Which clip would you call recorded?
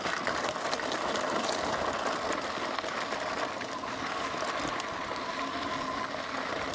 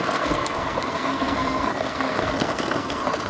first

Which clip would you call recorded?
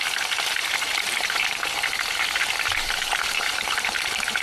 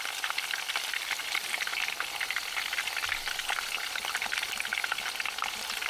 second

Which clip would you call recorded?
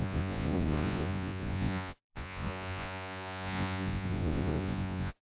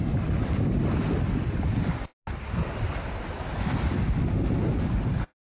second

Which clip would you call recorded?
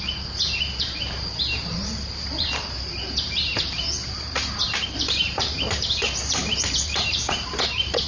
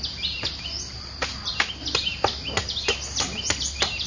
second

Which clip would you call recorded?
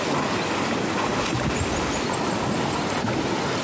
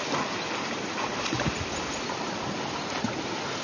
first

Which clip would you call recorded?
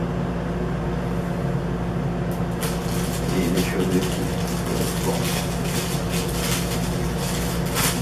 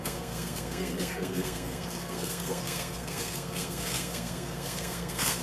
first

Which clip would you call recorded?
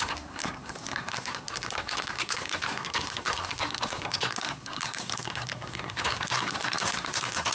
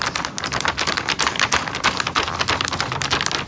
second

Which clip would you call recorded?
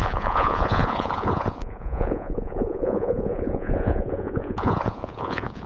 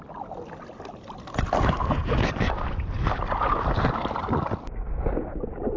second